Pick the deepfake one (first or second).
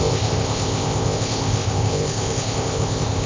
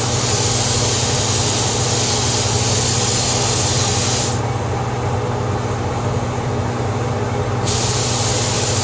first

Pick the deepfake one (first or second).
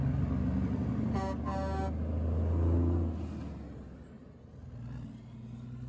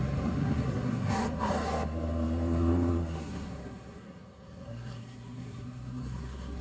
second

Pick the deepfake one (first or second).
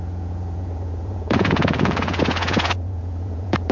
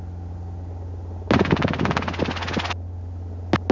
first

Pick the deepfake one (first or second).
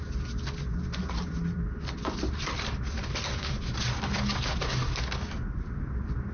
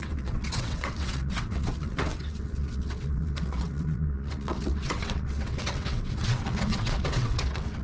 second